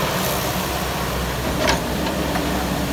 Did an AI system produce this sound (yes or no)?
yes